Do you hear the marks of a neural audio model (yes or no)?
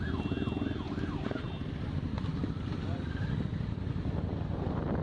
no